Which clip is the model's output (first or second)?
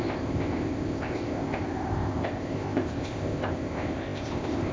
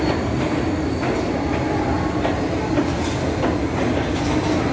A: first